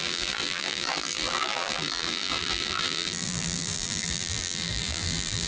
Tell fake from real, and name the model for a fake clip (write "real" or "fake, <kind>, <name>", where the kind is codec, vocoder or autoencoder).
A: fake, vocoder, BigVGAN v2